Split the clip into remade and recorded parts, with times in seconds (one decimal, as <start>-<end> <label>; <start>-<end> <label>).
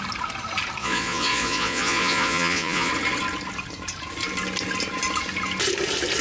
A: 0.0-0.8 recorded; 0.8-2.9 remade; 2.9-6.2 recorded